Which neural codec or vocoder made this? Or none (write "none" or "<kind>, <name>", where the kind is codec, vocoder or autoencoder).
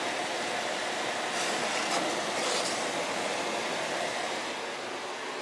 none